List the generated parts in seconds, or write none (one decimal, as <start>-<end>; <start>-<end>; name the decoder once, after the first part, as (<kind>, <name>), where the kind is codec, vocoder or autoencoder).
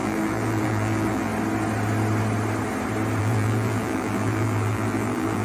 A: 0.0-1.3 (vocoder, BigVGAN v2); 3.2-5.4